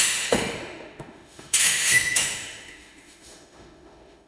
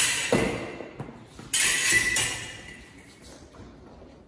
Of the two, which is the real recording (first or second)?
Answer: second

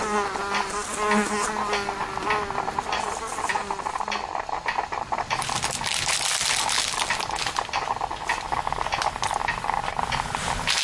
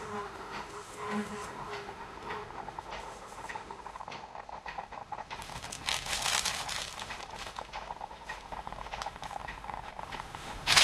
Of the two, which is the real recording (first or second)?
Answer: first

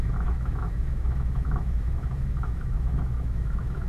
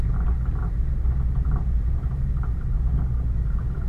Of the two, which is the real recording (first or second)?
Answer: second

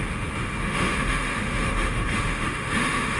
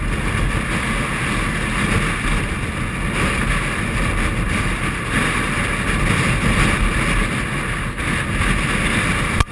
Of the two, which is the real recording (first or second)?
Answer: second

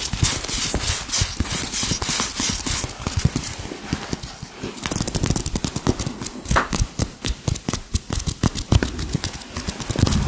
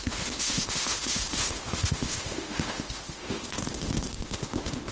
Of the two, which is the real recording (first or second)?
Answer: first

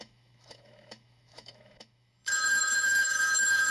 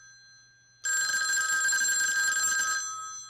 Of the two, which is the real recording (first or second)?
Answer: second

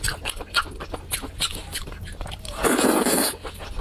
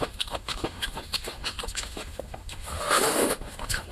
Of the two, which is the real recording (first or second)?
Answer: first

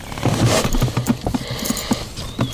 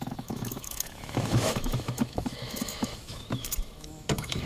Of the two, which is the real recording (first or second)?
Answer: first